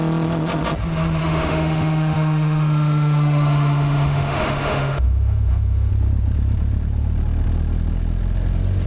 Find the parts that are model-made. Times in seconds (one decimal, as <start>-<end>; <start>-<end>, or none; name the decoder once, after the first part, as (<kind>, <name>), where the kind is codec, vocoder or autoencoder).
1.2-5.9 (autoencoder, DAC-VAE)